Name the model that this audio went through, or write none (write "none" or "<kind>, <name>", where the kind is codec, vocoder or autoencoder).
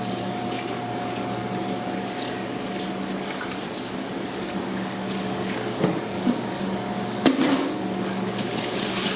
codec, DAC